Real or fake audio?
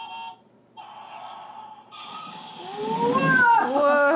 real